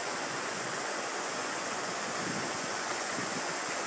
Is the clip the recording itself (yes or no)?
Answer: no